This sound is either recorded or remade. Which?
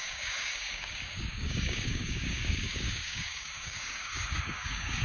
remade